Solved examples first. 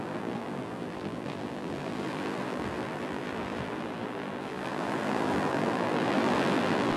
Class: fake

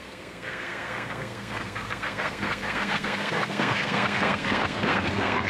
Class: fake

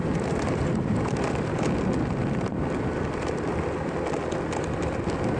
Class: real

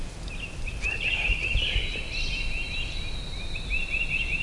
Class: real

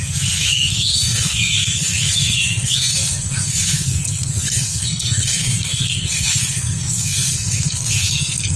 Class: fake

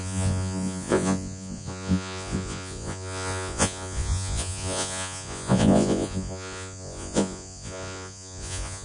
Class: fake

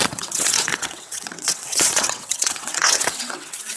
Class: fake